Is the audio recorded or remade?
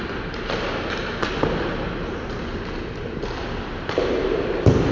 recorded